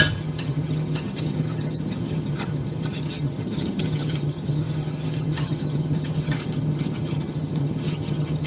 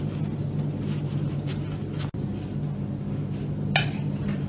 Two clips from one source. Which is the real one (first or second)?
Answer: second